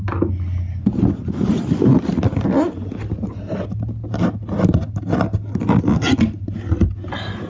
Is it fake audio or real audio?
real